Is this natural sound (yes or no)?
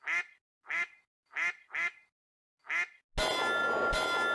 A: yes